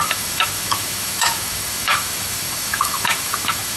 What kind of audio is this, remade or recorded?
remade